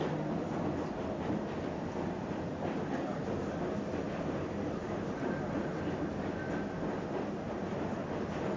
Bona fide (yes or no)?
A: yes